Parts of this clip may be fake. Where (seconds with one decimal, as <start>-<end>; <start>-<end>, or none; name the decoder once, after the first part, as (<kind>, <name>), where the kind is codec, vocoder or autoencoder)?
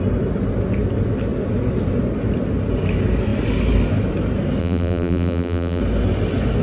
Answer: 4.6-5.8 (vocoder, BigVGAN v2)